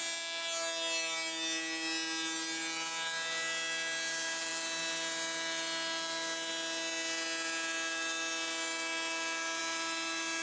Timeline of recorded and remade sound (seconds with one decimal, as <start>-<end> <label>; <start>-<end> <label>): 0.0-10.4 recorded